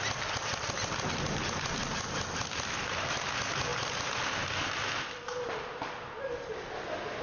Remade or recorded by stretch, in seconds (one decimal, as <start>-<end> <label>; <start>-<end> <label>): 0.0-7.2 recorded